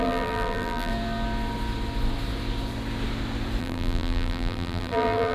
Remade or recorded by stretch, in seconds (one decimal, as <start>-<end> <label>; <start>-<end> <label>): 0.0-0.9 remade; 0.9-3.6 recorded; 3.6-5.3 remade